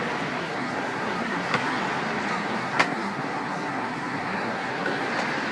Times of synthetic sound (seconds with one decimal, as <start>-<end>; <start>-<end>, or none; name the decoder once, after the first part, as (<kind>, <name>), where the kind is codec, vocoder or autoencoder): 0.4-1.8 (codec, SNAC); 2.3-5.1